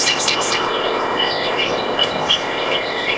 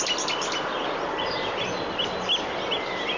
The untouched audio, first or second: second